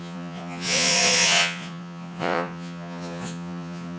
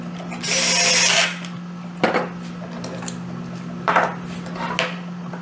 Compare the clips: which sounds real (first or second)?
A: second